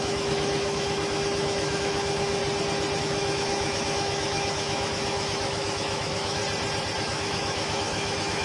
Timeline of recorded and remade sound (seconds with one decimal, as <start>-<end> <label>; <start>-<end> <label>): 0.0-2.4 remade; 2.4-3.0 recorded; 3.0-6.4 remade; 6.4-7.0 recorded; 7.0-8.4 remade